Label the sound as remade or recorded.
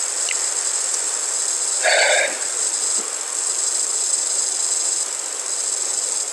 recorded